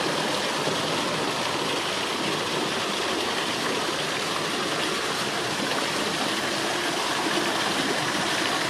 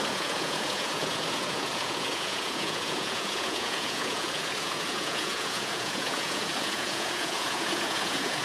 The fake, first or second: second